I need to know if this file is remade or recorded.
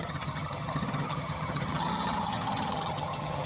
remade